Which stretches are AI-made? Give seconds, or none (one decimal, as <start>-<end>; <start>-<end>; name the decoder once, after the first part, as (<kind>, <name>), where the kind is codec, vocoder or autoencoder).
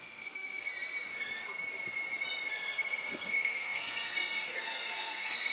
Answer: 0.0-0.7 (codec, SNAC); 2.5-5.5